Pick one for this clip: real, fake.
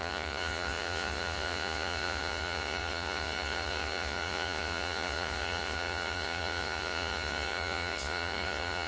fake